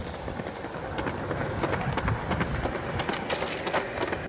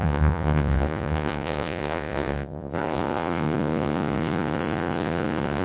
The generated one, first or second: second